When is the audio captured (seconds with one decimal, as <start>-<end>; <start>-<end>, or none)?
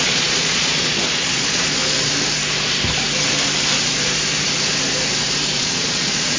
1.8-5.6